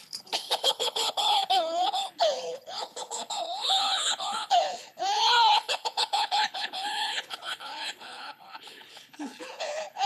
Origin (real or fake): fake